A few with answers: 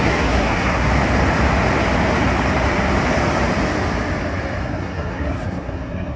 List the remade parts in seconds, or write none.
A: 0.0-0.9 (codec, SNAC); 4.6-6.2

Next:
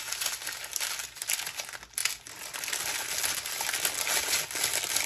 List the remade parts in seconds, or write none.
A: none